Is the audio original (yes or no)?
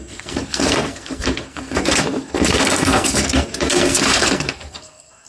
no